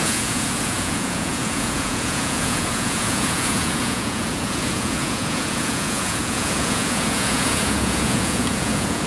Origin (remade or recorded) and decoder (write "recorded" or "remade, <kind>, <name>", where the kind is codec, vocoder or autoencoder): remade, vocoder, Vocos